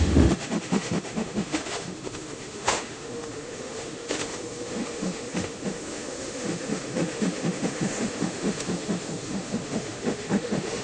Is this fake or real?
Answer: fake